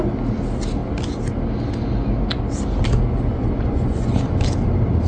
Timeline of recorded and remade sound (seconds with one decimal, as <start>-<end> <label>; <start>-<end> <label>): 0.0-3.3 recorded; 3.3-4.1 remade; 4.1-5.1 recorded